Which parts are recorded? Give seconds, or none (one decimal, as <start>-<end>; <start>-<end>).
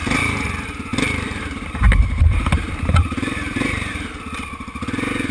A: 0.0-0.9; 4.1-5.3